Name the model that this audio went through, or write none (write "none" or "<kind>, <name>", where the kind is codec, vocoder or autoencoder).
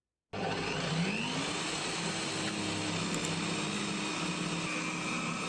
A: none